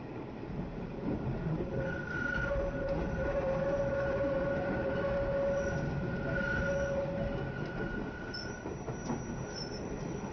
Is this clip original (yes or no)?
yes